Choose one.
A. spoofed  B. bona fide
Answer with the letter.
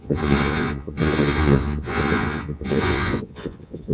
A